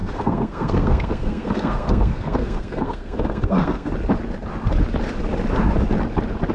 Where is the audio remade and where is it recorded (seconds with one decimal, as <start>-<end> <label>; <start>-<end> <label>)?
0.0-3.9 remade; 3.9-6.5 recorded

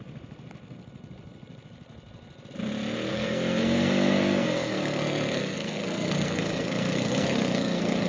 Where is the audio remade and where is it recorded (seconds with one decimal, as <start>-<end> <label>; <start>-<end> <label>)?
0.0-3.1 recorded; 3.1-8.1 remade

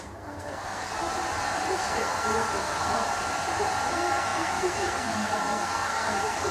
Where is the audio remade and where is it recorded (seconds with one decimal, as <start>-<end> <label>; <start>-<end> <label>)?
0.0-0.9 remade; 0.9-1.7 recorded; 1.7-3.1 remade; 3.1-3.9 recorded; 3.9-6.5 remade

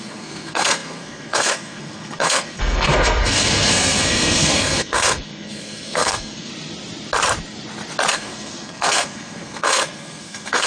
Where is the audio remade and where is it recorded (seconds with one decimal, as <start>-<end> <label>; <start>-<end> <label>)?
0.0-6.5 remade; 6.5-8.1 recorded; 8.1-10.7 remade